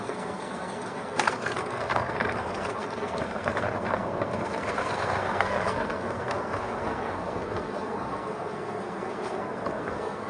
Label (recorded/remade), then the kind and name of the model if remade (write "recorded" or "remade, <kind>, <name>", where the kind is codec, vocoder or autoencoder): remade, codec, SNAC